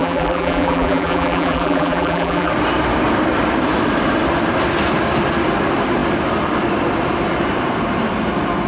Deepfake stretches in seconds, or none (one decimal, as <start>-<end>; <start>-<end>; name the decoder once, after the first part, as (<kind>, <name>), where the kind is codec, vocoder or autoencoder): 0.0-2.5 (vocoder, BigVGAN v2)